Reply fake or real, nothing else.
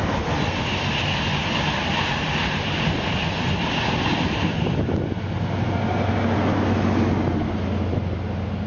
real